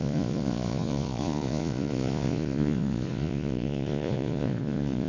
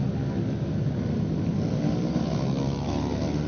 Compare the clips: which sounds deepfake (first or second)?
first